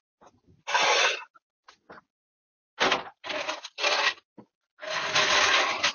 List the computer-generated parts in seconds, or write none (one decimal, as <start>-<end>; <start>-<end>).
none